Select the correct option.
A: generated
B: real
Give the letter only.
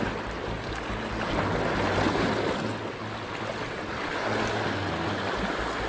B